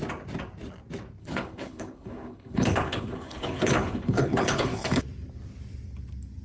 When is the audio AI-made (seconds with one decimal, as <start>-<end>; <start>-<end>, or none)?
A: 1.2-5.0